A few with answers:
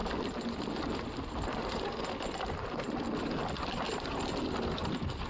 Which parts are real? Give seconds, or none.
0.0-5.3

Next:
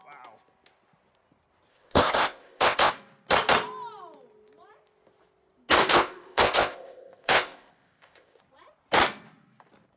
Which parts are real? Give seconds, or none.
0.0-1.7; 2.9-5.9; 8.4-10.0

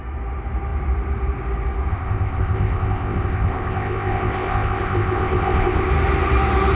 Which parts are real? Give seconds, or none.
0.0-1.9; 5.9-6.7

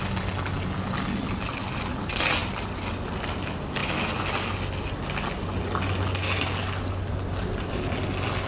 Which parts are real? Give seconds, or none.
0.0-8.5